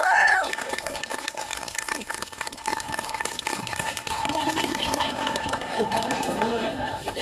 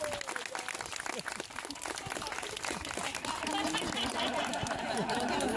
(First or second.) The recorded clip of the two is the second